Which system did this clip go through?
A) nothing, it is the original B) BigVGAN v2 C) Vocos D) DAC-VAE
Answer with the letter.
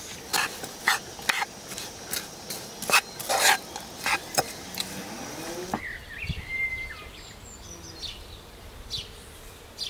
A